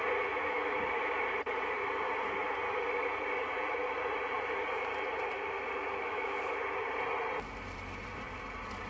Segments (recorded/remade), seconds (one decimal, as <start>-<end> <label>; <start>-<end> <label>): 0.0-0.4 recorded; 0.4-1.0 remade; 1.0-5.8 recorded; 5.8-6.5 remade; 6.5-8.9 recorded